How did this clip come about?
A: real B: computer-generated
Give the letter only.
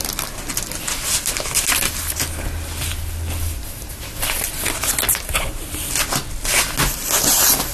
A